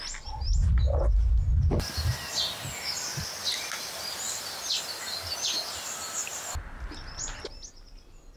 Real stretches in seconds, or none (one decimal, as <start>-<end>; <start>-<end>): 0.0-3.4; 4.7-8.4